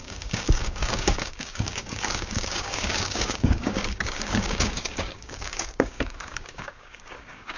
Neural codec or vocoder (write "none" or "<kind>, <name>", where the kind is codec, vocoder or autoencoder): codec, DAC